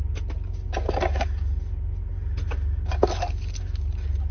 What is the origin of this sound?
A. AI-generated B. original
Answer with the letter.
B